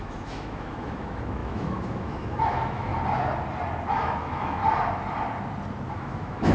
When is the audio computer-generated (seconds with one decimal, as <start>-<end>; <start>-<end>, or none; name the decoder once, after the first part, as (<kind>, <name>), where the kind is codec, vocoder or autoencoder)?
0.0-2.9 (autoencoder, DAC-VAE); 3.9-4.6; 5.9-6.5